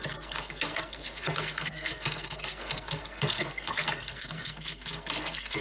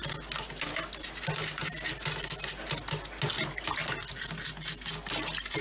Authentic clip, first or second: second